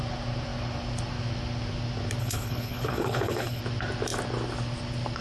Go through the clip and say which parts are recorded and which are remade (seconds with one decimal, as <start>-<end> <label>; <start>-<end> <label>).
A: 0.0-2.2 recorded; 2.2-3.6 remade; 3.6-5.2 recorded